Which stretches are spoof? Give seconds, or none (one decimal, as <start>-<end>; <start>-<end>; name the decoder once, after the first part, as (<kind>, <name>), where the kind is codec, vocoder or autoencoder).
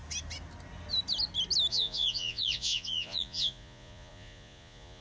1.7-5.0 (vocoder, Vocos)